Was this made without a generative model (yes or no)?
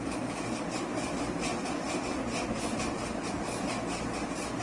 yes